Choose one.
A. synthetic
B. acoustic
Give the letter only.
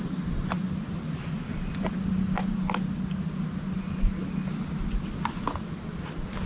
B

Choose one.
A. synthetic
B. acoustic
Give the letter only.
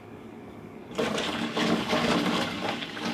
A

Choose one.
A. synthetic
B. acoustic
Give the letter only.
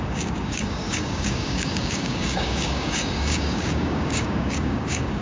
A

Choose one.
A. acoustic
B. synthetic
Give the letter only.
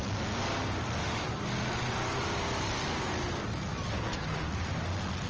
A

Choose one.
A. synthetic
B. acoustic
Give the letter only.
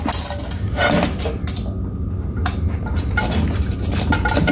B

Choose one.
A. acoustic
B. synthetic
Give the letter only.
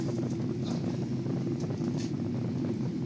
A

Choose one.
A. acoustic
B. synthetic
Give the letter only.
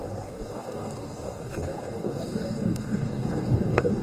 B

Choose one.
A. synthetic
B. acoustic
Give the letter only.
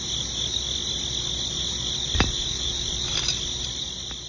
B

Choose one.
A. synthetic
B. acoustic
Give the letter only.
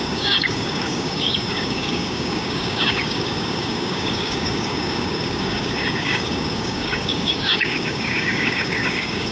A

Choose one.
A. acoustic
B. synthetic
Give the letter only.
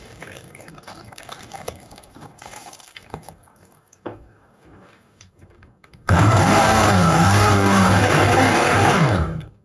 B